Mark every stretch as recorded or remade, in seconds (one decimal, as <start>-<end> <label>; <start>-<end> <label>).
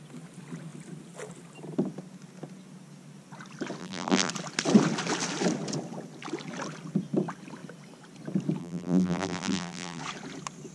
0.0-3.8 recorded; 3.8-4.3 remade; 4.3-8.6 recorded; 8.6-10.0 remade; 10.0-10.7 recorded